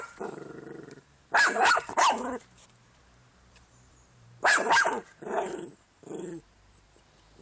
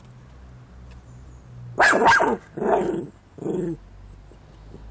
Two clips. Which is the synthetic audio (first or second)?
first